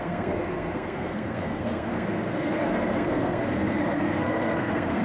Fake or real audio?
fake